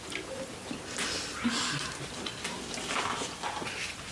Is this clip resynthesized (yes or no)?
no